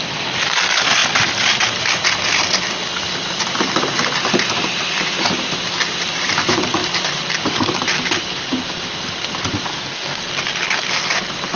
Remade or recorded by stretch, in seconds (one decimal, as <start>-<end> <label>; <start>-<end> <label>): 0.0-9.7 recorded; 9.7-10.2 remade; 10.2-11.6 recorded